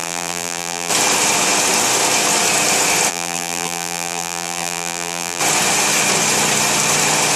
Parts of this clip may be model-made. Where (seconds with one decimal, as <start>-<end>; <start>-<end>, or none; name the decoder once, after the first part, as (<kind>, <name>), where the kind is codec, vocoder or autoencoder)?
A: 0.0-0.9 (vocoder, BigVGAN v2); 3.1-5.4